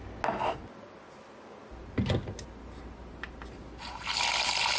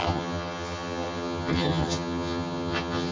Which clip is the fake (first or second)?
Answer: second